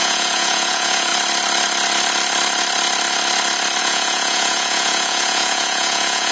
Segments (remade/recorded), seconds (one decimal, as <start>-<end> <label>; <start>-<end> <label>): 0.0-1.1 remade; 1.1-3.8 recorded; 3.8-6.3 remade